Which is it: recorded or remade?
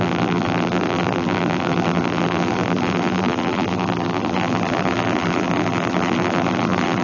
remade